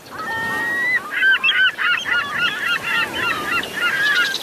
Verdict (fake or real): real